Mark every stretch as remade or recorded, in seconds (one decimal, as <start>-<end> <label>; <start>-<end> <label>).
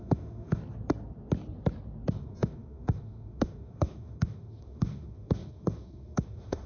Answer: 0.0-0.6 remade; 0.6-2.1 recorded; 2.1-6.7 remade